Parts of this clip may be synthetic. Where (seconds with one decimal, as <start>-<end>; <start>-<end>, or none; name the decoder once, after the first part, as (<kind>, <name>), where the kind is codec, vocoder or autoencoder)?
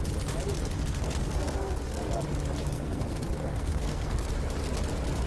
0.7-2.2 (codec, SNAC); 2.6-4.3